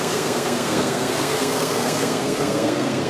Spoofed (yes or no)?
yes